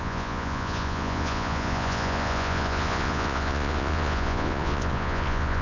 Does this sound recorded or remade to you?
remade